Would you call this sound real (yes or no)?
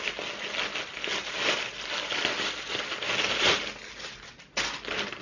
yes